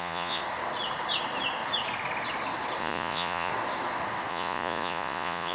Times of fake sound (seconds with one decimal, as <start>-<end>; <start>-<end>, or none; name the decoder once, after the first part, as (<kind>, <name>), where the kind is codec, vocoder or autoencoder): 0.0-0.4 (vocoder, Vocos); 2.8-3.5; 4.3-5.5